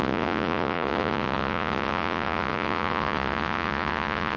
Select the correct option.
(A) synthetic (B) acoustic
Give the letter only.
A